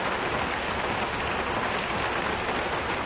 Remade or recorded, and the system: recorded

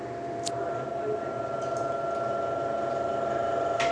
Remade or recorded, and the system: recorded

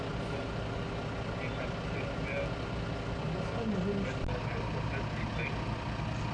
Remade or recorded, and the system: recorded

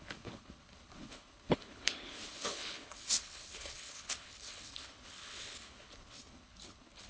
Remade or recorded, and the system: remade, codec, HILCodec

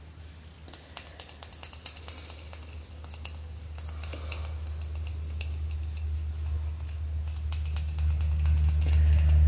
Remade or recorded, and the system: recorded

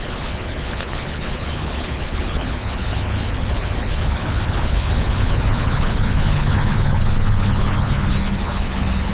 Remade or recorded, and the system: remade, codec, HILCodec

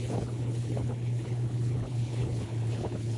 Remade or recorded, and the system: remade, codec, HILCodec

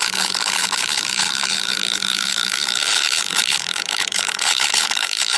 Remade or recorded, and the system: remade, codec, HILCodec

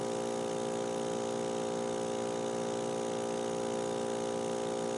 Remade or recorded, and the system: recorded